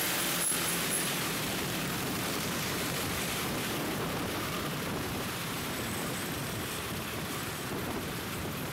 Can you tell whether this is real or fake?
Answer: fake